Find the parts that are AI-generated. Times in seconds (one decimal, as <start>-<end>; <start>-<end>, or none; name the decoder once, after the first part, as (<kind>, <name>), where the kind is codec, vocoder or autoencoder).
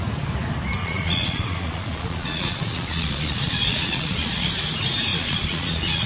0.8-4.5 (vocoder, Vocos); 5.1-6.1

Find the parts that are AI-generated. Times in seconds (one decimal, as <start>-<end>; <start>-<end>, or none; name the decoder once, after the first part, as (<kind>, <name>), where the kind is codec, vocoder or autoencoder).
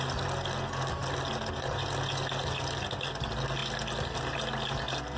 none